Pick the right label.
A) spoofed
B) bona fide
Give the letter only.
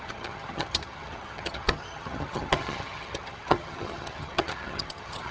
A